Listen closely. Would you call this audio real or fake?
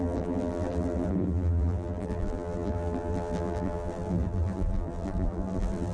fake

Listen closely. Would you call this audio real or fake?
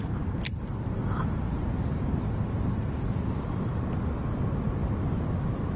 real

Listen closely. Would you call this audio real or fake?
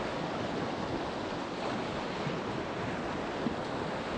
real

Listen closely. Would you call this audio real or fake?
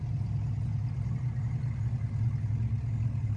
real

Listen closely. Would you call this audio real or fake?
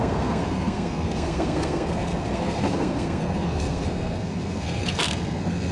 fake